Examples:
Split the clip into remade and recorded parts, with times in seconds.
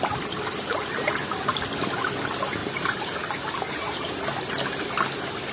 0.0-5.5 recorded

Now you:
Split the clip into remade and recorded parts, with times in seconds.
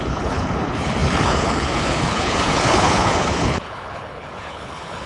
0.0-5.1 remade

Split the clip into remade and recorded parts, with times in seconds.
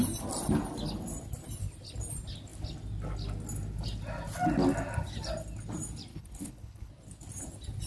0.0-6.1 recorded; 6.1-6.9 remade; 6.9-7.9 recorded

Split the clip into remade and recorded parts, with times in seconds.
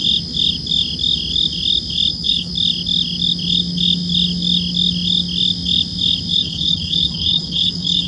0.0-2.1 recorded; 2.1-2.5 remade; 2.5-6.3 recorded; 6.3-8.1 remade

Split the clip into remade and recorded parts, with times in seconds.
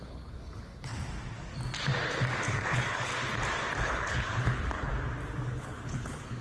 0.0-0.9 remade; 0.9-2.5 recorded; 2.5-3.1 remade; 3.1-3.8 recorded; 3.8-4.9 remade; 4.9-5.5 recorded; 5.5-6.4 remade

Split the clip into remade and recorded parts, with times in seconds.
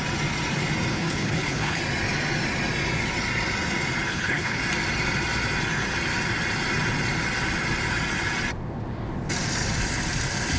0.0-0.9 recorded; 0.9-1.8 remade; 1.8-4.1 recorded; 4.1-4.6 remade; 4.6-10.6 recorded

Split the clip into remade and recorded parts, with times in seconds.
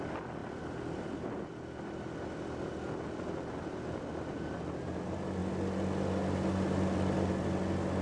0.0-8.0 recorded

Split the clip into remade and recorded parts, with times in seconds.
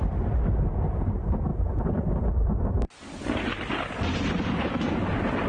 0.0-5.5 recorded